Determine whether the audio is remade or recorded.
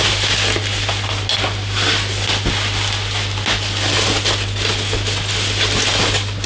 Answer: recorded